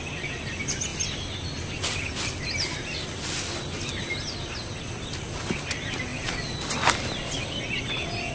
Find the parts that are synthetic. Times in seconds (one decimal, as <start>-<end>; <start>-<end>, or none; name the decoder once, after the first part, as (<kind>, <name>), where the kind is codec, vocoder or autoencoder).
none